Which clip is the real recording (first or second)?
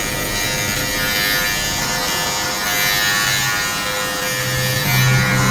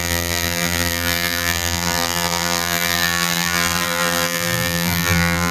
first